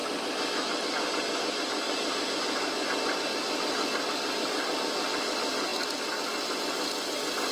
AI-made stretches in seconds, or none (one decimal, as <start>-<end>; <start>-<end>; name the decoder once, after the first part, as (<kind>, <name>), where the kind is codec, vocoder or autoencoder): none